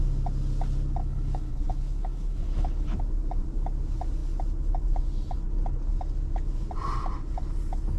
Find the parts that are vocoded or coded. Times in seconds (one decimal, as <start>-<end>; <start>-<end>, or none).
1.0-3.0